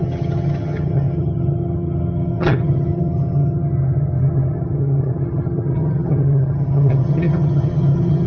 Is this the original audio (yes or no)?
no